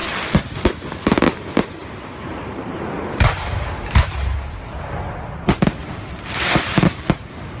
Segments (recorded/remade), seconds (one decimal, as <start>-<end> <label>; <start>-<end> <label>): 0.0-1.8 recorded; 1.8-4.1 remade; 4.1-5.8 recorded; 5.8-7.0 remade; 7.0-7.6 recorded